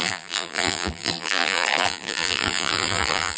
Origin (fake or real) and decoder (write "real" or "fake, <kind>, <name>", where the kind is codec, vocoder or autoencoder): fake, vocoder, BigVGAN v2